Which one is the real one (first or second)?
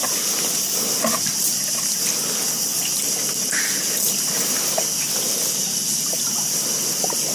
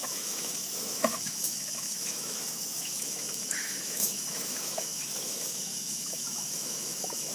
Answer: first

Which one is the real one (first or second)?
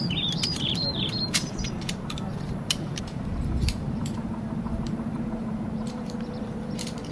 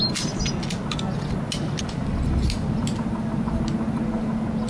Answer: second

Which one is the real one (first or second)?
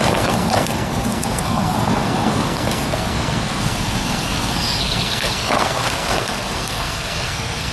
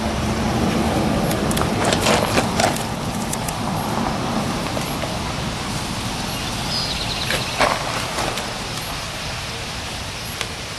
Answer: second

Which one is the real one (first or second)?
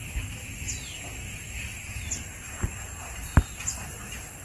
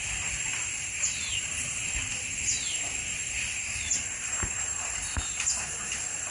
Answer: first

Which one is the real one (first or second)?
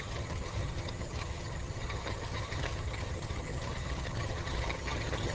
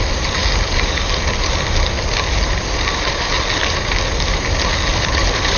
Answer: second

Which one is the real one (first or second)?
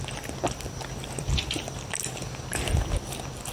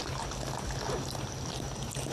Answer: second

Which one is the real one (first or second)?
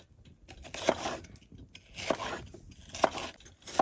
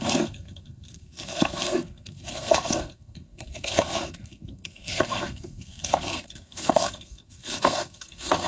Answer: first